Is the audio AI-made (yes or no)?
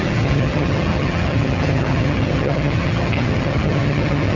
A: yes